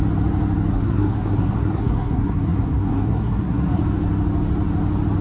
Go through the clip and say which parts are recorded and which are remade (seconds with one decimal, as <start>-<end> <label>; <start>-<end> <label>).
0.0-0.7 recorded; 0.7-3.8 remade; 3.8-5.2 recorded